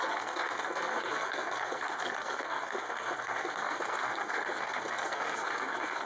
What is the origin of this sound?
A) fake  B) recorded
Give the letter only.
A